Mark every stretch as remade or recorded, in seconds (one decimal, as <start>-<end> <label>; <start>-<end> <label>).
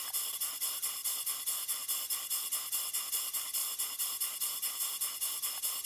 0.0-5.9 recorded